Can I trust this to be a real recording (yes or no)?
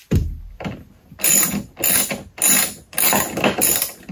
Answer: yes